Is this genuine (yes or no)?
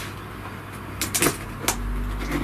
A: yes